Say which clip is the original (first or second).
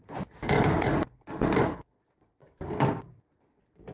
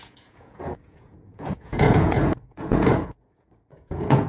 first